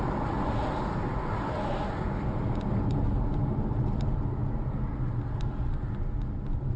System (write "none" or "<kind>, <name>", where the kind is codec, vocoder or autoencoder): none